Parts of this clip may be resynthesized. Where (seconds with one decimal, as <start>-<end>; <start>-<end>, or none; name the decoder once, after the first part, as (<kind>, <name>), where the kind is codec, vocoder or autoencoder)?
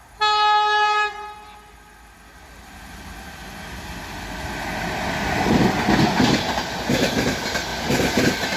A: none